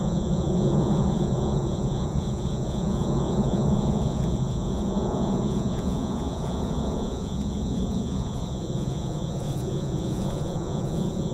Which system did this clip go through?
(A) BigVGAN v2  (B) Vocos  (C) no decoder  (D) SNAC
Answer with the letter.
B